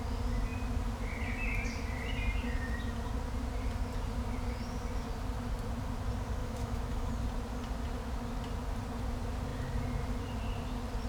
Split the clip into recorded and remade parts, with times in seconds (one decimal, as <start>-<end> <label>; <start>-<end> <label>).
0.0-6.4 recorded; 6.4-7.1 remade; 7.1-11.1 recorded